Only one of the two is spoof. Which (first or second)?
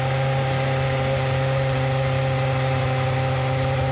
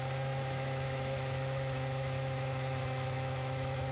second